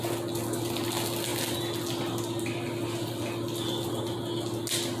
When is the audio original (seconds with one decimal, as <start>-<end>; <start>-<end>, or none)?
0.0-5.0

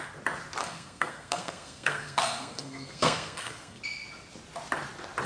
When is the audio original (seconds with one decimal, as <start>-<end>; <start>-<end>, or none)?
0.0-0.6; 3.8-5.3

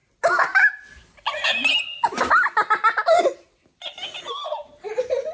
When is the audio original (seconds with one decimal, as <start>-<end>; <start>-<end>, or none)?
0.0-5.3

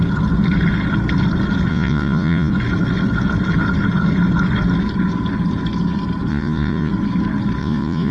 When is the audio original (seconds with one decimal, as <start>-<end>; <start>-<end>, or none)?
0.0-1.7; 2.5-6.3; 6.9-7.6

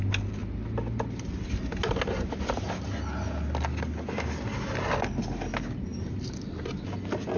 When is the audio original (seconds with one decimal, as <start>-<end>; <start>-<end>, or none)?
0.0-5.9; 6.6-7.4